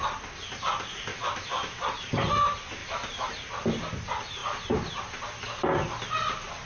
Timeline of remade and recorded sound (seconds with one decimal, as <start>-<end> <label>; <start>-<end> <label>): 0.0-1.1 recorded; 1.1-1.8 remade; 1.8-2.8 recorded; 2.8-3.3 remade; 3.3-6.7 recorded